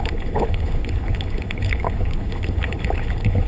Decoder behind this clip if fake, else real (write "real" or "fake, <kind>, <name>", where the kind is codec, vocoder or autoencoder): fake, codec, HILCodec